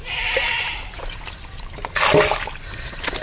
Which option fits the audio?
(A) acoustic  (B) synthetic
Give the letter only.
A